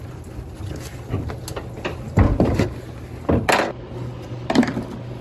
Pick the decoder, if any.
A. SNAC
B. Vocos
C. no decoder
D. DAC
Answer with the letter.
C